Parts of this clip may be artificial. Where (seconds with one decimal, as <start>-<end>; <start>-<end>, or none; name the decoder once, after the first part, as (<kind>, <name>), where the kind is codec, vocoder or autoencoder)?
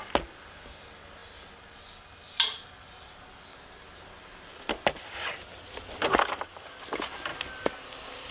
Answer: none